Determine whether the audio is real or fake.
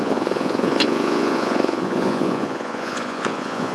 fake